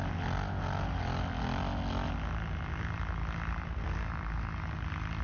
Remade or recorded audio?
recorded